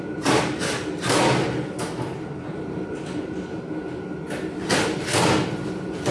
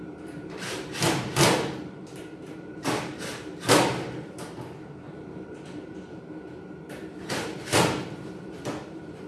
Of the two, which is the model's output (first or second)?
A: second